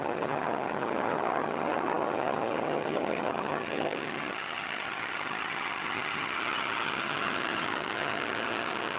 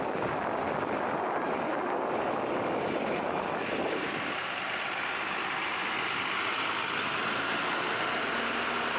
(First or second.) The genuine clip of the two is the second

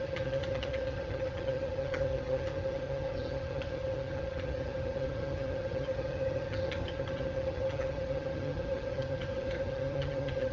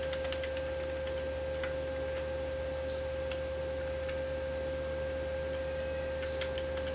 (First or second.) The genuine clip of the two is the second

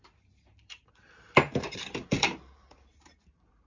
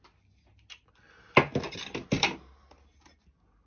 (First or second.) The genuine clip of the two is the second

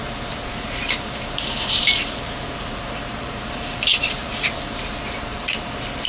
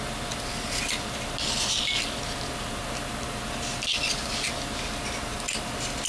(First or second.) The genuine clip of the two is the second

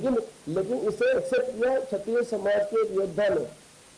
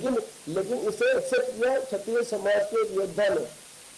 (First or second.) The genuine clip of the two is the first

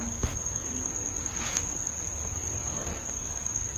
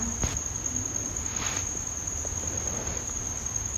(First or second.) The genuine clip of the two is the second